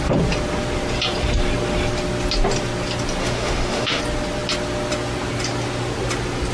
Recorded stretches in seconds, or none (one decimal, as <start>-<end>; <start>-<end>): 0.0-3.2; 4.0-6.5